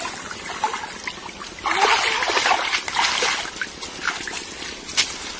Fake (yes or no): no